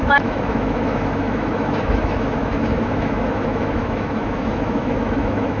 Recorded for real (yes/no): no